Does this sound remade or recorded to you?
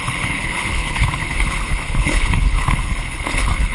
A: remade